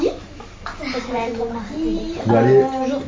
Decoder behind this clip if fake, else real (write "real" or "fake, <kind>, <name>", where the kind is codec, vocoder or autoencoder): real